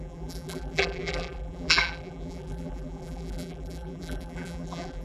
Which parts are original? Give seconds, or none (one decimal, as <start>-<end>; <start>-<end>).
none